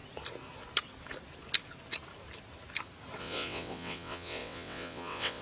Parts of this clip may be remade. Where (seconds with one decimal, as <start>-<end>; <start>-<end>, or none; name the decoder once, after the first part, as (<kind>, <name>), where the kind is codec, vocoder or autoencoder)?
3.2-5.4 (vocoder, WaveNeXt)